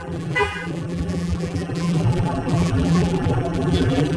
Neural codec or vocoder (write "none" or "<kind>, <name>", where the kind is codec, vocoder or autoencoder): vocoder, BigVGAN v2